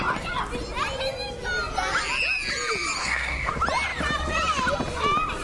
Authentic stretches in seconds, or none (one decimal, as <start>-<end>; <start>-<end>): 0.0-3.0; 3.5-5.4